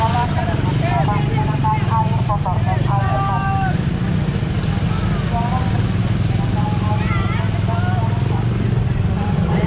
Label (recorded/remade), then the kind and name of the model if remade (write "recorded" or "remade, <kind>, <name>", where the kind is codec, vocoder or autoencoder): recorded